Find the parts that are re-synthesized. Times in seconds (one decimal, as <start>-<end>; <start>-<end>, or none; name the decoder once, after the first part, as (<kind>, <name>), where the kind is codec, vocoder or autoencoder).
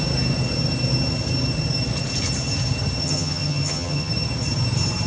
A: 3.0-4.1 (vocoder, HiFi-GAN)